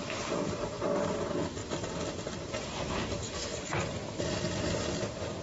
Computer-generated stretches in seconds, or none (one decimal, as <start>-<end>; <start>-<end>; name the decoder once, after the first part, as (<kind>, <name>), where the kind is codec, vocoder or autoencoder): 1.6-4.2 (vocoder, BigVGAN v2)